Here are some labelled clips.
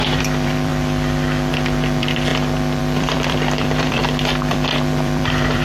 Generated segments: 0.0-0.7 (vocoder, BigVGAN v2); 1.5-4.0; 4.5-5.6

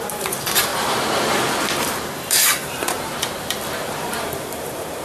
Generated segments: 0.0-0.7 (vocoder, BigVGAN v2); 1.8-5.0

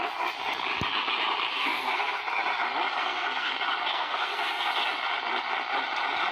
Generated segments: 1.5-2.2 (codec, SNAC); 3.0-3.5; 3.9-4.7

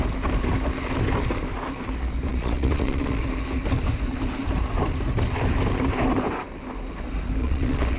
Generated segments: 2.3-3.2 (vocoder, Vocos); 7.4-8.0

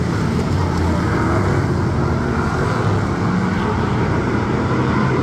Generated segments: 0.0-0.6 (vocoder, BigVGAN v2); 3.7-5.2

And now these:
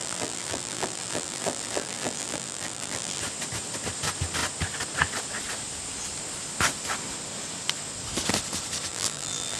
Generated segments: 0.0-3.2 (vocoder, BigVGAN v2); 8.9-9.6

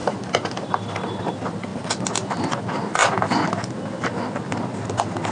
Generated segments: none